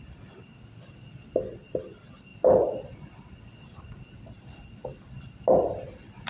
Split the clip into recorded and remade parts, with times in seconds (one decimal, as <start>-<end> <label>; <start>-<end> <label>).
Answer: 0.0-2.3 recorded; 2.3-6.3 remade